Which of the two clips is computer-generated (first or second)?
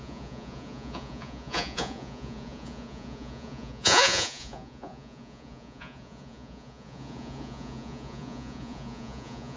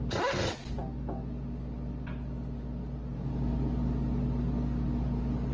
first